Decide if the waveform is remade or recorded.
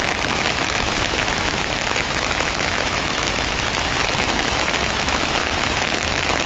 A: remade